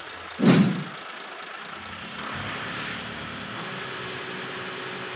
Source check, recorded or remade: recorded